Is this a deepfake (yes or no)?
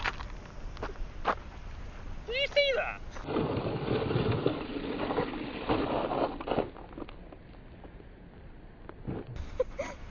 no